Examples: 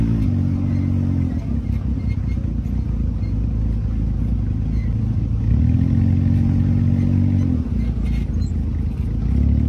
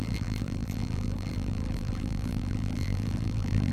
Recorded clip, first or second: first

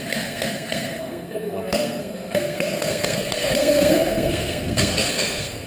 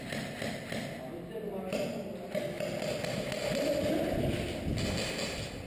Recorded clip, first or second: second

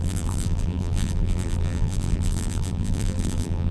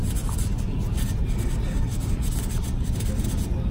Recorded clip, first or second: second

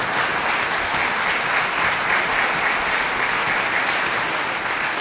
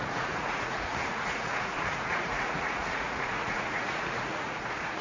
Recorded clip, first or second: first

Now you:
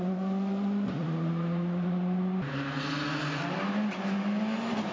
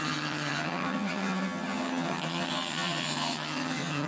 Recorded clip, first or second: first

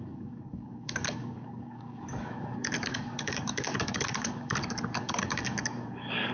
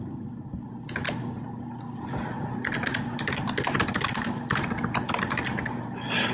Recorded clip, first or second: second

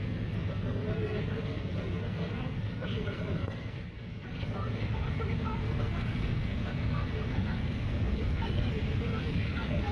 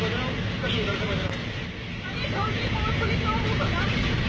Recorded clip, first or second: second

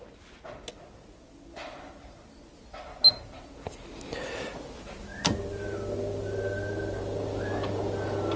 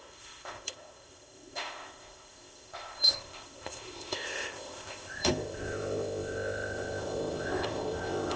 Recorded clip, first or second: first